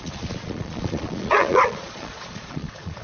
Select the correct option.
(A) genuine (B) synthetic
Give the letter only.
B